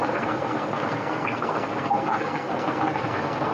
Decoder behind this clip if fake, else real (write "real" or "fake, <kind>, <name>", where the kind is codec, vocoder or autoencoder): fake, codec, SNAC